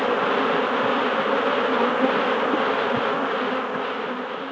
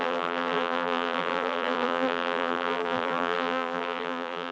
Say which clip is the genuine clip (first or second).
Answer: first